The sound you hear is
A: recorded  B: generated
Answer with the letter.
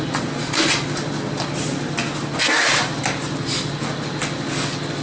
A